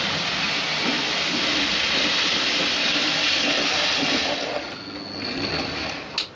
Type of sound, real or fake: real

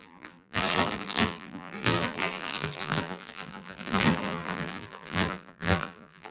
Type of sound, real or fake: fake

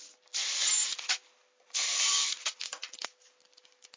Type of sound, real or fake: real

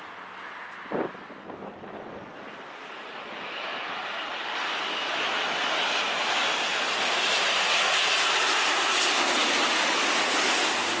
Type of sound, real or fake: real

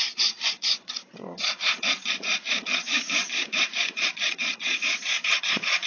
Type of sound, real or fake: fake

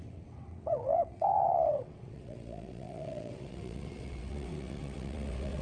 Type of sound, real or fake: fake